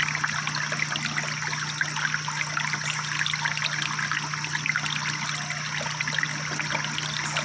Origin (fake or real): real